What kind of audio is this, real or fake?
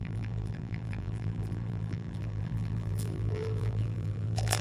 fake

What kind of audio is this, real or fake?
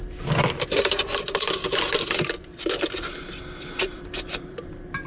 fake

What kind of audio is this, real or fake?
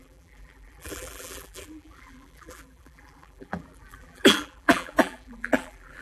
fake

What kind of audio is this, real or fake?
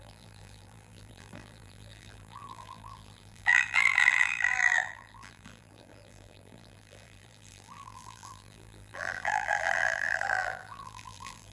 fake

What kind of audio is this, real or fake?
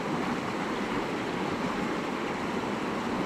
real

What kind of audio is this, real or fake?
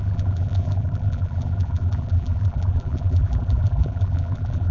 fake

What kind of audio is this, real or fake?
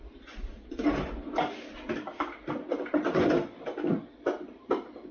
fake